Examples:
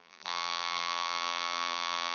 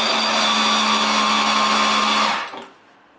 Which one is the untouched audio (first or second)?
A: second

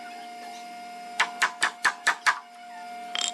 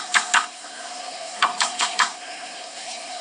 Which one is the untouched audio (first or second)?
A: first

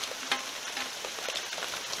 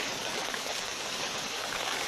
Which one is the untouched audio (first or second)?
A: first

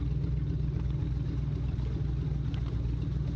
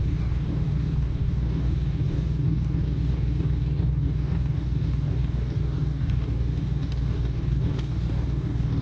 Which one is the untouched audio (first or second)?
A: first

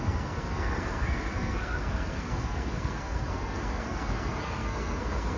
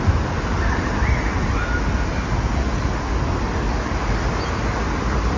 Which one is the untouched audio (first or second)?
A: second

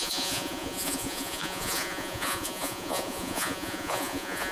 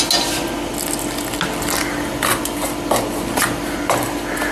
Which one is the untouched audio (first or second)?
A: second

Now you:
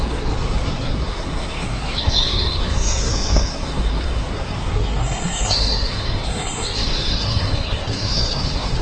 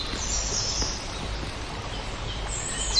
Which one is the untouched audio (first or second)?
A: second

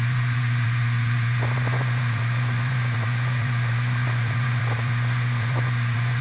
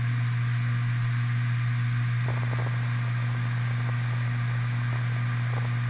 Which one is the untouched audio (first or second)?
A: second